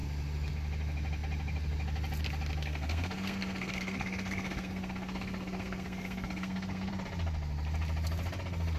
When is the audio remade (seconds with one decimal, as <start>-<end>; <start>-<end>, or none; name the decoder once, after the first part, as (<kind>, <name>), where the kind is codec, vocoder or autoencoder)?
2.6-6.9 (codec, SNAC)